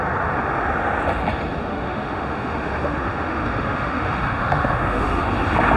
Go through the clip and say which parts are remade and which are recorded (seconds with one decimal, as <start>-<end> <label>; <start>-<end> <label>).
0.0-1.7 recorded; 1.7-5.2 remade; 5.2-5.8 recorded